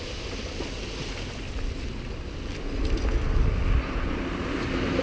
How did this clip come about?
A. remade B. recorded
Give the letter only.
B